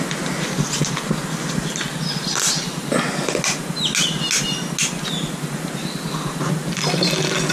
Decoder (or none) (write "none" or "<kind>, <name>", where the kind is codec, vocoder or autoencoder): none